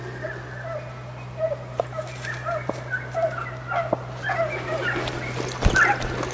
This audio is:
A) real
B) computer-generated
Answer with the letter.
A